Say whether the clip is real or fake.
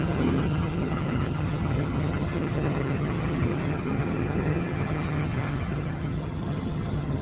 fake